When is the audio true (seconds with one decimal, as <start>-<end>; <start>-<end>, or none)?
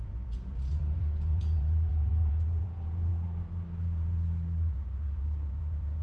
3.1-3.8